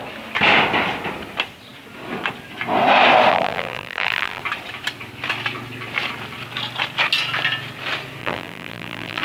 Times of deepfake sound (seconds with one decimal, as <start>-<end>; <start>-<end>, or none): 3.3-4.4; 8.2-9.2